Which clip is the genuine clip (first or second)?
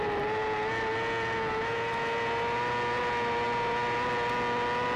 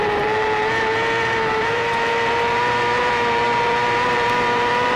first